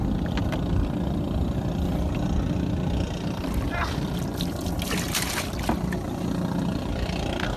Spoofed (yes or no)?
no